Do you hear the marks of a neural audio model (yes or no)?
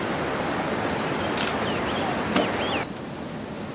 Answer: no